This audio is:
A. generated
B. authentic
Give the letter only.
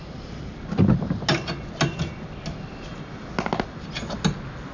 B